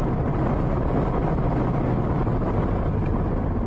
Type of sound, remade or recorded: recorded